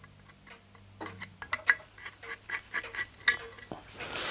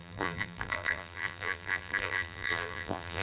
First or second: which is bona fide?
first